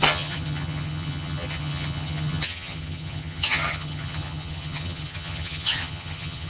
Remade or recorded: remade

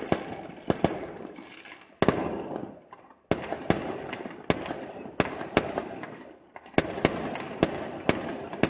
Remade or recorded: recorded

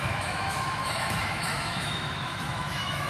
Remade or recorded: remade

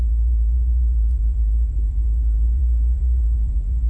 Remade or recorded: remade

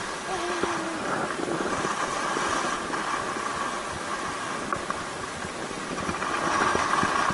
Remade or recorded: recorded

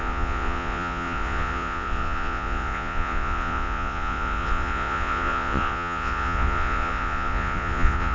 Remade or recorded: remade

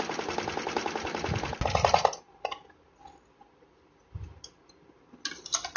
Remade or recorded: recorded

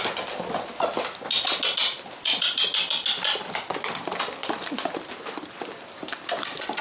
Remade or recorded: recorded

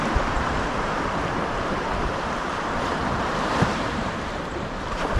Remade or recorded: remade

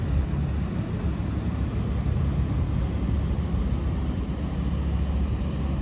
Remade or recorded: recorded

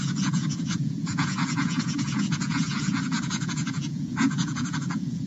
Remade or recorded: remade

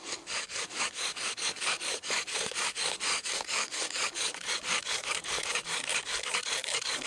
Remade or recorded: remade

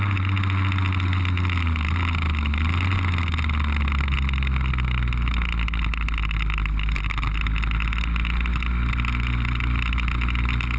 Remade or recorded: recorded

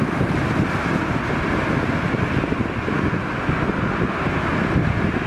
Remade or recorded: recorded